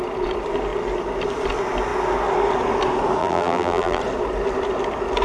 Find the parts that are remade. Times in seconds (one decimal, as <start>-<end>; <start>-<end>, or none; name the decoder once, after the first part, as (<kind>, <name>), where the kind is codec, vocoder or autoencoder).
3.2-4.0 (vocoder, BigVGAN v2)